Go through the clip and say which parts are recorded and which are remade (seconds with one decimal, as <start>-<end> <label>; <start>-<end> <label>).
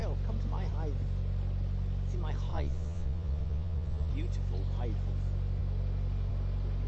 0.0-2.5 recorded; 2.5-4.1 remade; 4.1-6.9 recorded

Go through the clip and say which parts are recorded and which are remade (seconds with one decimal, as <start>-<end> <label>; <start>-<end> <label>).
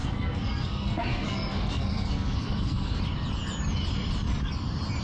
0.0-3.0 remade; 3.0-5.0 recorded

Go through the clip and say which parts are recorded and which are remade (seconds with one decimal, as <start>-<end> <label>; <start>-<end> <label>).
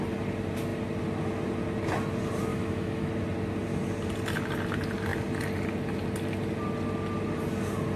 0.0-2.5 recorded; 2.5-3.1 remade; 3.1-8.0 recorded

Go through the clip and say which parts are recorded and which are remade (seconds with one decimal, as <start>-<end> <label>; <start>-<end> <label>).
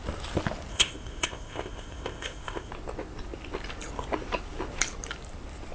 0.0-0.7 recorded; 0.7-2.7 remade; 2.7-5.7 recorded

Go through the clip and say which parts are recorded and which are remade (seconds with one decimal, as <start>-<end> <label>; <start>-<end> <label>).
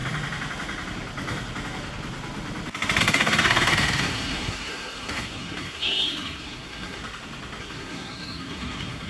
0.0-3.0 recorded; 3.0-7.0 remade; 7.0-7.6 recorded; 7.6-9.1 remade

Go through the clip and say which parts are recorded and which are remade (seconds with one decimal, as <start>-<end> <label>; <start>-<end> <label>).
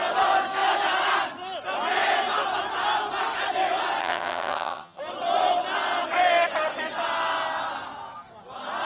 0.0-4.0 recorded; 4.0-5.0 remade; 5.0-8.9 recorded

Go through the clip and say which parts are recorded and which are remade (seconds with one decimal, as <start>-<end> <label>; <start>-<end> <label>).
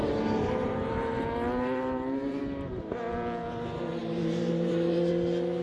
0.0-2.4 remade; 2.4-4.0 recorded; 4.0-5.1 remade; 5.1-5.6 recorded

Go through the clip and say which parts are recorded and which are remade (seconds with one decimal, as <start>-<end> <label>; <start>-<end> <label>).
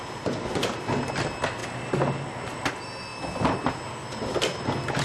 0.0-5.0 recorded